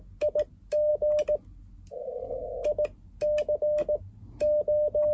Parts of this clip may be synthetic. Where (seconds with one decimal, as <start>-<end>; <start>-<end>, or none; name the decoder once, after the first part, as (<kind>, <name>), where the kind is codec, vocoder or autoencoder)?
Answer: none